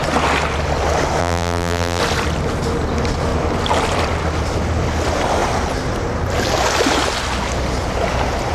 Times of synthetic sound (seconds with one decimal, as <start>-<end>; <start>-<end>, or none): 1.2-2.0